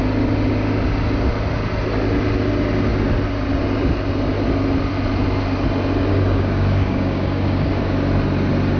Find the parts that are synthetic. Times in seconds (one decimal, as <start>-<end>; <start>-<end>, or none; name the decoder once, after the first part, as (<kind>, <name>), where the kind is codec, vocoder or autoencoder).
6.1-7.7 (codec, DAC)